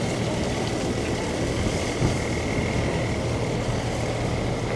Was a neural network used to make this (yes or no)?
no